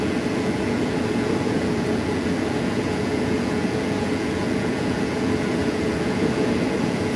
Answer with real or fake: fake